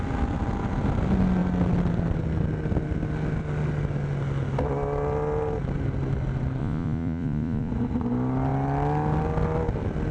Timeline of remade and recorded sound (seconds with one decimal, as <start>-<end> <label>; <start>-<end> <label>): 0.0-6.6 recorded; 6.6-7.7 remade; 7.7-10.1 recorded